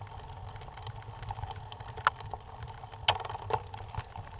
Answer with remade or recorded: recorded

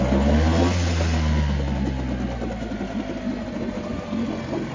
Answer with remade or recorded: recorded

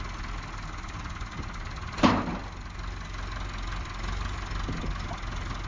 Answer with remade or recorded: recorded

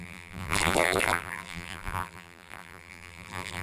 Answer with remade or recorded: remade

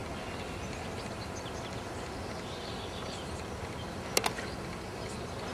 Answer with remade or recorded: recorded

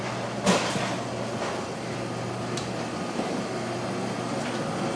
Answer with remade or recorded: recorded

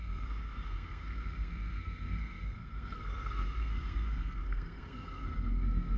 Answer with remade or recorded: remade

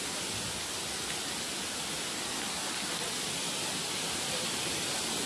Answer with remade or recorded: recorded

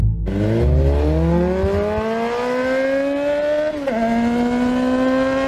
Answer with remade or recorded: recorded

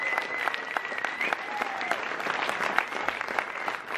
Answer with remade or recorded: recorded